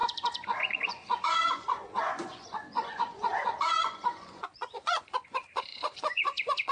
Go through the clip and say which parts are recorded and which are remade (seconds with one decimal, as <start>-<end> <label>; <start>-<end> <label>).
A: 0.0-6.7 remade